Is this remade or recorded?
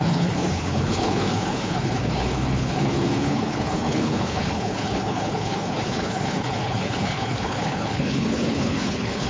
remade